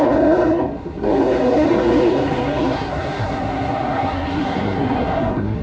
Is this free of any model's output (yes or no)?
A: no